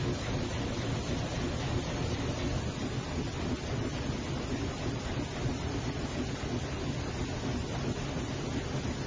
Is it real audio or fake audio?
real